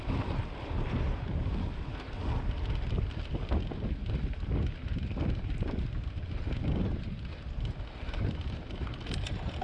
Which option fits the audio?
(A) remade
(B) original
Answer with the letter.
B